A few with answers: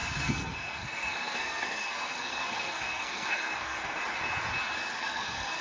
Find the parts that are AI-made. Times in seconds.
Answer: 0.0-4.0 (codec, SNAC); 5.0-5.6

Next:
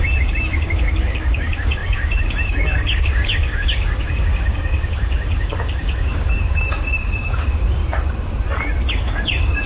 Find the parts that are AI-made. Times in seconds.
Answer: 0.0-7.8 (codec, DAC); 8.9-9.7